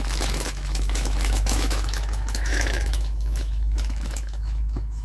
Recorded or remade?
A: remade